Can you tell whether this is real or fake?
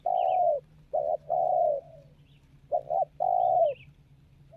real